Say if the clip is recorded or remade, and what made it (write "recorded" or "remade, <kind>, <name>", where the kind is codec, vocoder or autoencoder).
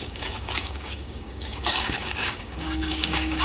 remade, codec, DAC